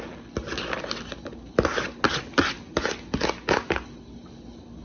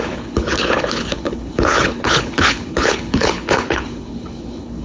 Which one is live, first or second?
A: first